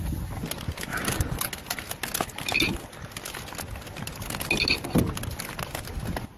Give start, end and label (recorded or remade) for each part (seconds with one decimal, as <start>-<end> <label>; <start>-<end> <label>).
0.0-6.4 recorded